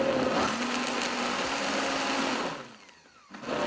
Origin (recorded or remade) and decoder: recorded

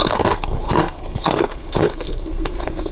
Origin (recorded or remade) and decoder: remade, codec, SNAC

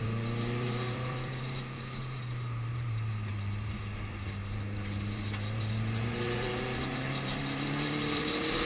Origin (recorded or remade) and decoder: remade, vocoder, BigVGAN v2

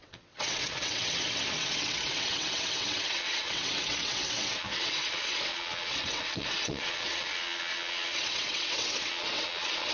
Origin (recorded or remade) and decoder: remade, vocoder, WaveNeXt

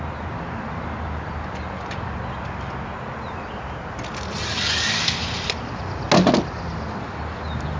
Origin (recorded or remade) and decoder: recorded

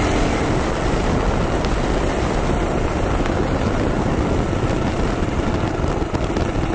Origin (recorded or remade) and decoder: recorded